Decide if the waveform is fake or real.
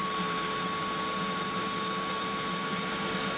real